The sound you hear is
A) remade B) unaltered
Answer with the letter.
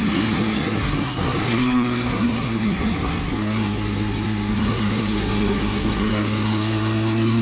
A